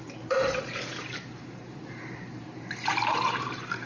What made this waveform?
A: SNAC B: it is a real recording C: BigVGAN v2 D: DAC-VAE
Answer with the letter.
C